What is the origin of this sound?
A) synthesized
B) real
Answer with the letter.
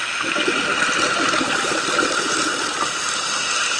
B